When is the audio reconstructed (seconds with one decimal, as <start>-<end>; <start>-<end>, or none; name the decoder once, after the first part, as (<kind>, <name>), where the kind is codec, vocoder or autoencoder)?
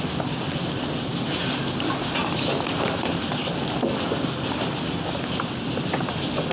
none